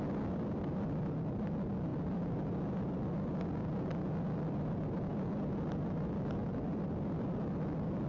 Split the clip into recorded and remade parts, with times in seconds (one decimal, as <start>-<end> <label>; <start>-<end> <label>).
0.0-8.1 recorded